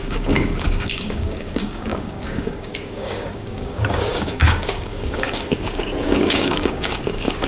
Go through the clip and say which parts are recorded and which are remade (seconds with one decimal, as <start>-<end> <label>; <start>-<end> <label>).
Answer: 0.0-7.5 remade